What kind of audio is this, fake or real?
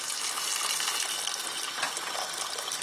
real